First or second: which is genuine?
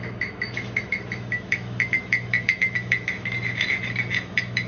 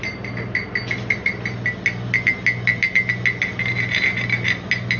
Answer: second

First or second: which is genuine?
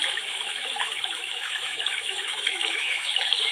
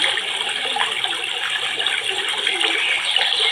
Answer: second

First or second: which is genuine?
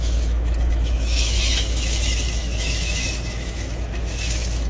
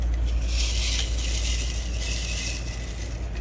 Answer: second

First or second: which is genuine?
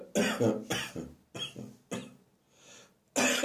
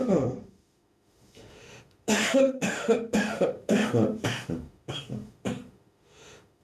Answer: first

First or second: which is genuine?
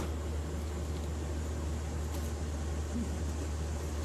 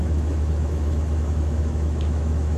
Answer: first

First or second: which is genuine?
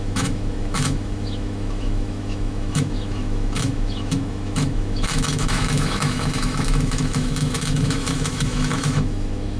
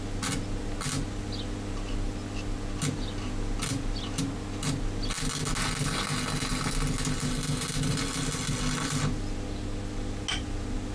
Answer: second